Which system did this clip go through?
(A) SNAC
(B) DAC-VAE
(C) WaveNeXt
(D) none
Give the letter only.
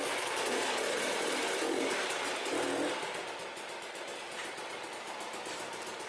D